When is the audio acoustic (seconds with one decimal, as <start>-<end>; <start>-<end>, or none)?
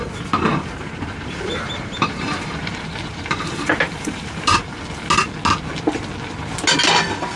0.0-0.5; 4.8-7.4